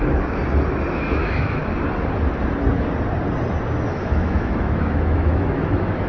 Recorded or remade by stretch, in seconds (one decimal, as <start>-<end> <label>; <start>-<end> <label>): 0.0-0.4 remade; 0.4-0.9 recorded; 0.9-1.6 remade; 1.6-3.9 recorded; 3.9-6.1 remade